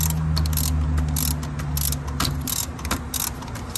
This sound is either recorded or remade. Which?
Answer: recorded